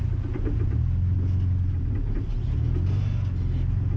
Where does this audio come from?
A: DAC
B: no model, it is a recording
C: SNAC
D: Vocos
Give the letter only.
B